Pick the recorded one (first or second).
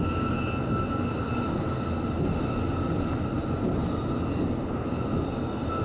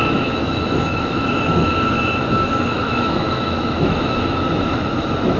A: first